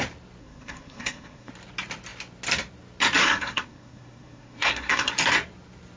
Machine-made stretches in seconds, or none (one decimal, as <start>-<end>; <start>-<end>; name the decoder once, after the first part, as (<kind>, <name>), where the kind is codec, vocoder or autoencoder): 0.4-1.5 (codec, SNAC); 3.2-5.1